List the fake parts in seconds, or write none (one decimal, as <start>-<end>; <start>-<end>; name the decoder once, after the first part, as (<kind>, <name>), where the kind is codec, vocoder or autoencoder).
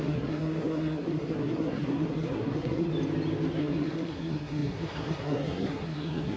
0.0-2.9 (codec, SNAC); 3.6-6.4